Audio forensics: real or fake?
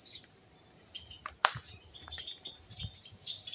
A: fake